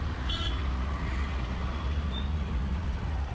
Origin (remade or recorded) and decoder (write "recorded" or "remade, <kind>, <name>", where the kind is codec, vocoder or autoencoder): remade, vocoder, Vocos